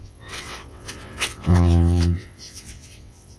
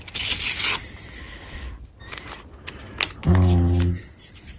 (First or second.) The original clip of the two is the second